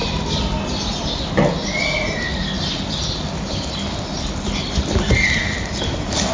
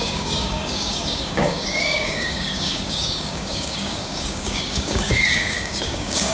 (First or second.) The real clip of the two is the first